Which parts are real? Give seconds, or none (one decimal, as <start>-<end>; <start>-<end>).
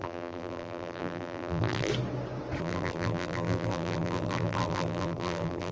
1.9-2.6